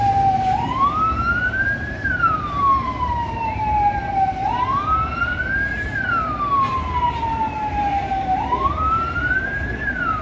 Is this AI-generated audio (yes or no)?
yes